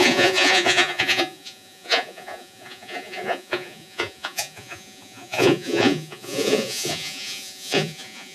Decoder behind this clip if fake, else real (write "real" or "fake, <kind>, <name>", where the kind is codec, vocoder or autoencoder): fake, vocoder, Vocos